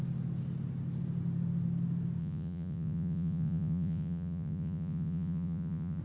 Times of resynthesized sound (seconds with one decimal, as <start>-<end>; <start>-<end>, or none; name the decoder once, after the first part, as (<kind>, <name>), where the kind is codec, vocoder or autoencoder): 2.2-6.0 (vocoder, Vocos)